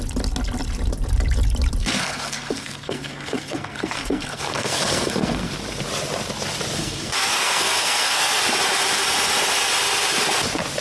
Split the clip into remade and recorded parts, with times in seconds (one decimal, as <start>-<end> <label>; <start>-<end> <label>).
0.0-1.8 recorded; 1.8-5.5 remade; 5.5-6.8 recorded; 6.8-8.4 remade; 8.4-10.8 recorded